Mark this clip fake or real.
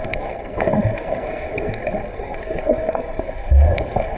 fake